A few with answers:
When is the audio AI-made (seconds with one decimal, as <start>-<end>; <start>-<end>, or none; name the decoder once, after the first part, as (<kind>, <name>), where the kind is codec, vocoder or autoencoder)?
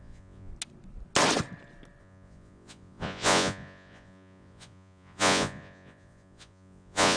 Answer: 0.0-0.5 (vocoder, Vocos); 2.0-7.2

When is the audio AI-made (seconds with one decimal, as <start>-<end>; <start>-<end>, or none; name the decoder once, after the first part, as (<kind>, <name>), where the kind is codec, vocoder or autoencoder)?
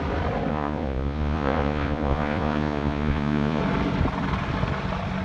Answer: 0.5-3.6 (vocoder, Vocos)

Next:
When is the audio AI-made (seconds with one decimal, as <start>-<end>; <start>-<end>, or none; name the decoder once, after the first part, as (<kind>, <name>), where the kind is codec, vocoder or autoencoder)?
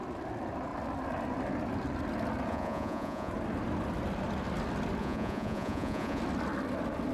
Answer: 2.5-3.3 (vocoder, Vocos); 5.0-6.2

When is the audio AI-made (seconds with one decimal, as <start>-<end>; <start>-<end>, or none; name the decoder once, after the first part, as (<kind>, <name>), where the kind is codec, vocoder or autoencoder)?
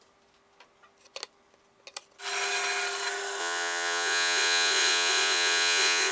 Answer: 3.4-6.1 (vocoder, Vocos)